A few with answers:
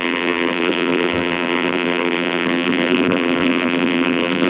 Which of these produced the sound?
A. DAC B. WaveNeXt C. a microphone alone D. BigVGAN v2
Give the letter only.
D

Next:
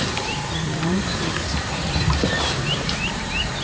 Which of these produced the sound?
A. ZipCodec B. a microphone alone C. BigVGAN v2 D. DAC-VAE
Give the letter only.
C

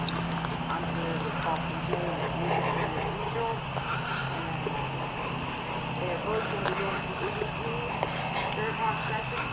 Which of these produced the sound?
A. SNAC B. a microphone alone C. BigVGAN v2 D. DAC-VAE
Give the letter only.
B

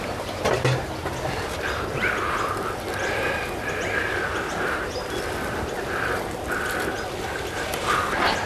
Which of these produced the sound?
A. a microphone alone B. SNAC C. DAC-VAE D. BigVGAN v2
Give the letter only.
A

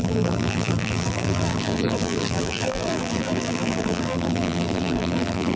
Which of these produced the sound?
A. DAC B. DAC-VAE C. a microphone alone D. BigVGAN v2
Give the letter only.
D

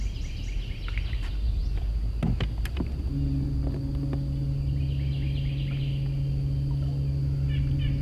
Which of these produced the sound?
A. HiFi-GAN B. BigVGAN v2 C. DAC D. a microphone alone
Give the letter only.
D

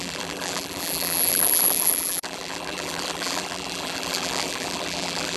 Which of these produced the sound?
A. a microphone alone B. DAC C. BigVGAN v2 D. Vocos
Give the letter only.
C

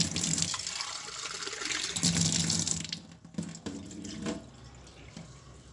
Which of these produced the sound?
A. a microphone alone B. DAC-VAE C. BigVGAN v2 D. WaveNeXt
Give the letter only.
A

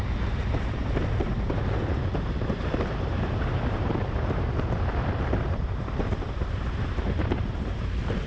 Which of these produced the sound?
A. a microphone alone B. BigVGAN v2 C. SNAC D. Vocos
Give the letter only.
B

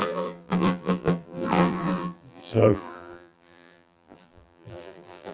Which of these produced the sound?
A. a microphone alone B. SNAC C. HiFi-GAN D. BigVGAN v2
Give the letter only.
D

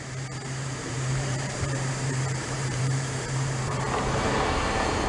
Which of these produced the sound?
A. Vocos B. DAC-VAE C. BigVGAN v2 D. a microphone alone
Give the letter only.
C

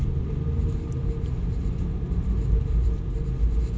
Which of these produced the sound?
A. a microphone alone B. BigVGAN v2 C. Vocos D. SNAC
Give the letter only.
B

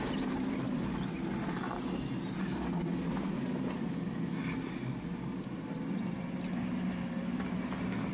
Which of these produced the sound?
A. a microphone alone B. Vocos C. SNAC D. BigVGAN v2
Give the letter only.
A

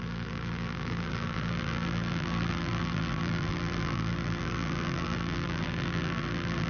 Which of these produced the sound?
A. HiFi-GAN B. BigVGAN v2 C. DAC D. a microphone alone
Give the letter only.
B